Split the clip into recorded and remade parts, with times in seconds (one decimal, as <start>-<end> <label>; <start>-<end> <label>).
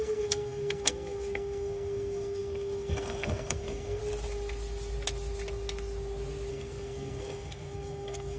0.0-4.0 remade; 4.0-6.5 recorded; 6.5-8.4 remade